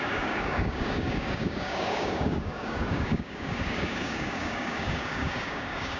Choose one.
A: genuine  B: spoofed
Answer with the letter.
B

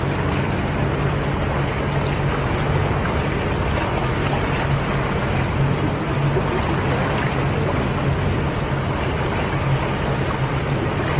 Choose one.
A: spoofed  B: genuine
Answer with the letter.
B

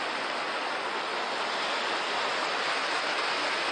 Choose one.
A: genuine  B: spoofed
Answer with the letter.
A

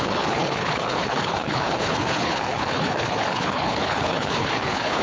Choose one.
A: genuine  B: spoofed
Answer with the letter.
B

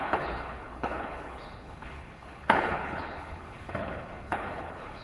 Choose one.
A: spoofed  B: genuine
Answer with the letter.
A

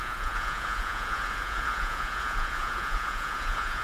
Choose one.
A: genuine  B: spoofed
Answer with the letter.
B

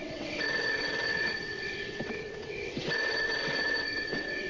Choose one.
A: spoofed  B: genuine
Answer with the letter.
A